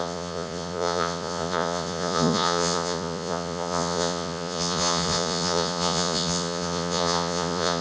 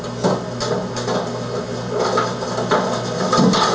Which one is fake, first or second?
first